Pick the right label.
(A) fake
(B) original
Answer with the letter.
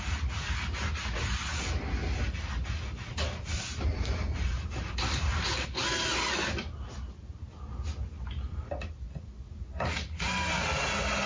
B